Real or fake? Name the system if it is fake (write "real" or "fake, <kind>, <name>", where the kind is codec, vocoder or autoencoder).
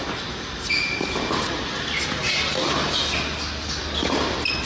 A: real